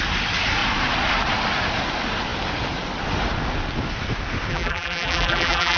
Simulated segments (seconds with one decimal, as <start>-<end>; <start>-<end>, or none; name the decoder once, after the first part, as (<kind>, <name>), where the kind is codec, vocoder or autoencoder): 4.5-5.8 (vocoder, BigVGAN v2)